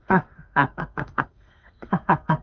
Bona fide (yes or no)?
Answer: no